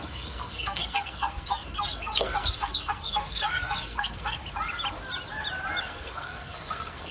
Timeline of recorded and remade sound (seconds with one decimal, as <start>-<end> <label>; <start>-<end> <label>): 0.0-4.4 remade; 4.4-5.8 recorded; 5.8-7.1 remade